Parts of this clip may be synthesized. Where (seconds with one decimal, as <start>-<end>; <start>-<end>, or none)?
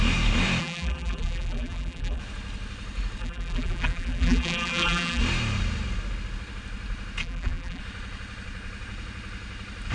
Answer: 0.6-2.2; 3.2-5.2; 7.2-7.8